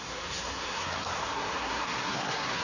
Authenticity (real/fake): fake